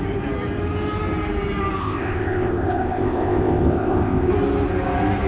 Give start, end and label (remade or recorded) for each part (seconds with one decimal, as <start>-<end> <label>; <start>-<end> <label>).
0.0-1.8 recorded; 1.8-4.3 remade; 4.3-5.3 recorded